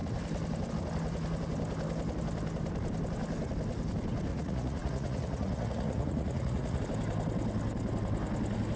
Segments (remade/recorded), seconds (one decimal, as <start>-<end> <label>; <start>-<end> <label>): 0.0-4.3 recorded; 4.3-6.8 remade; 6.8-8.8 recorded